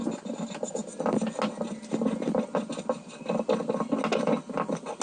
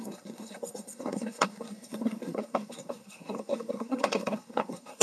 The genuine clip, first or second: first